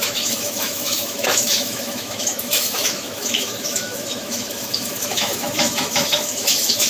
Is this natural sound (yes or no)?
no